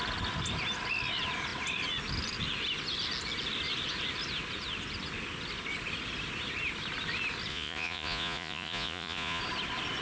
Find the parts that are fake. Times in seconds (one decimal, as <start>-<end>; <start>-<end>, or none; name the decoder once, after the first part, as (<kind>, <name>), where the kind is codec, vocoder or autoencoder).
7.5-9.4 (vocoder, Vocos)